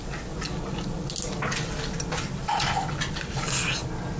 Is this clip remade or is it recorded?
recorded